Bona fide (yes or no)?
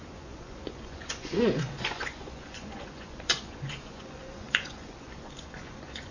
no